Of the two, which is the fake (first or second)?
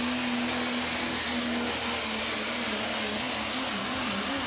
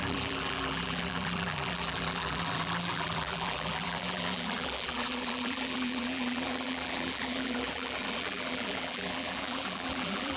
second